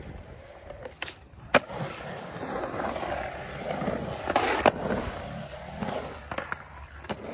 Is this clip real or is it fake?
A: real